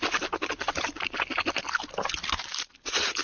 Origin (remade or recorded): recorded